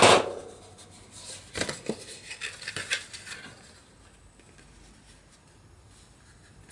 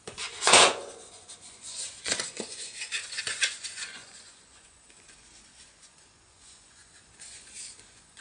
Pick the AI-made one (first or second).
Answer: second